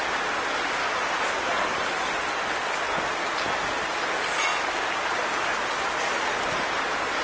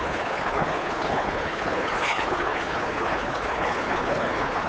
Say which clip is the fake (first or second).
second